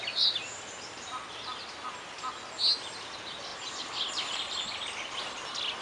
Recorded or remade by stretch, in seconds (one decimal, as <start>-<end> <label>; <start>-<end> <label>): 0.0-5.8 recorded